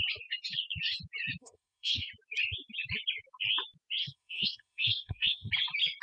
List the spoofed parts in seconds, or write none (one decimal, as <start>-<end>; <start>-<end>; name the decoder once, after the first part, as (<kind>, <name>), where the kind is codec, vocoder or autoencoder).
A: 1.4-2.1 (codec, SNAC); 4.0-5.5